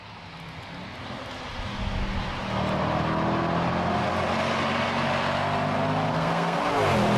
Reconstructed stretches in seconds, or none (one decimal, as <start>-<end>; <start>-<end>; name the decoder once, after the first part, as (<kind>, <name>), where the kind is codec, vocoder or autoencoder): 6.1-6.6 (codec, SNAC)